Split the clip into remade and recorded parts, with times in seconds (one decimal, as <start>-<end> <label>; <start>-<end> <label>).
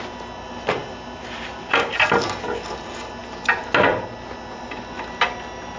0.0-5.8 recorded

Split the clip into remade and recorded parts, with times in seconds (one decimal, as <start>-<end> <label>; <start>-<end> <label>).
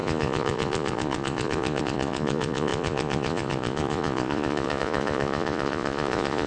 0.0-6.5 remade